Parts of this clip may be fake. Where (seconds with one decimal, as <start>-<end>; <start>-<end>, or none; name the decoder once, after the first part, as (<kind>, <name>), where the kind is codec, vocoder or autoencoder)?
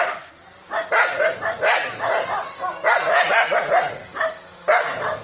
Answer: none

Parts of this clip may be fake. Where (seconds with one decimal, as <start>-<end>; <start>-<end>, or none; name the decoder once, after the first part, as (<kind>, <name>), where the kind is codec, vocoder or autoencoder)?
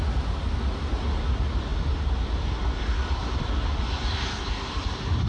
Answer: 3.2-3.7 (vocoder, BigVGAN v2)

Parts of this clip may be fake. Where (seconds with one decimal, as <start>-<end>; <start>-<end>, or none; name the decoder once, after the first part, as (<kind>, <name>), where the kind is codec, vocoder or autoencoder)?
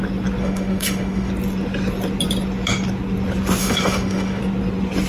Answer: 0.4-1.3 (autoencoder, DAC-VAE); 3.6-4.4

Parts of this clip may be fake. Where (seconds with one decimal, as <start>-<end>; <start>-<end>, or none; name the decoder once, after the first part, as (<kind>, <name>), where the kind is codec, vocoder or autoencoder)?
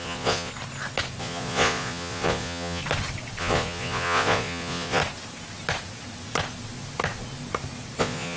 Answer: 0.0-0.5 (vocoder, Vocos); 1.2-2.8; 3.4-5.0; 8.0-8.4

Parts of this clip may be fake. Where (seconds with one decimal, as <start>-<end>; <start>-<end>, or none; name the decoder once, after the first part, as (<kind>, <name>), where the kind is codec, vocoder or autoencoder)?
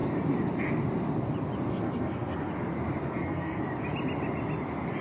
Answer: 1.7-2.5 (codec, SNAC); 3.0-3.6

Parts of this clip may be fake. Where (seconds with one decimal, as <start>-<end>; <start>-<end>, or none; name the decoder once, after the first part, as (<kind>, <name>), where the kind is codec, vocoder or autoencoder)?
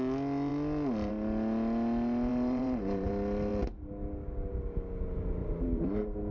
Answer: 2.3-3.1 (vocoder, BigVGAN v2); 5.4-6.3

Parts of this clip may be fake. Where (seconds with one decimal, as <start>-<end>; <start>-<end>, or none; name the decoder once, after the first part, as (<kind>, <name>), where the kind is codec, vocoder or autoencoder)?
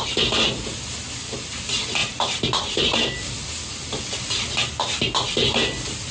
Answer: none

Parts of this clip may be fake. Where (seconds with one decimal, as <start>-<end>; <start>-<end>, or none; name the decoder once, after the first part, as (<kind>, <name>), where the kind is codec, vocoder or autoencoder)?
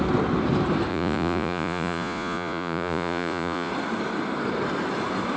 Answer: 0.9-3.7 (vocoder, Vocos)